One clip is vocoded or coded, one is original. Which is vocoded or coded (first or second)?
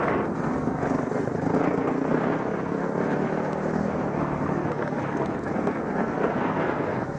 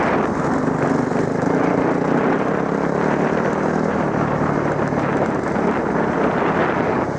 first